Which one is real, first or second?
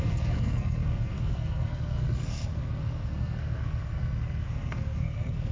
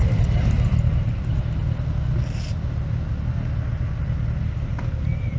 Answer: second